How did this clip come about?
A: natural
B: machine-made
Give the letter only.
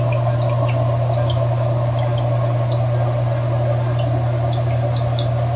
A